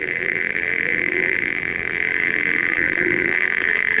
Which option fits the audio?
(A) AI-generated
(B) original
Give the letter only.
A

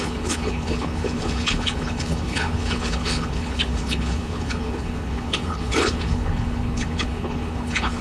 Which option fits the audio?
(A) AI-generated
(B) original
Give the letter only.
A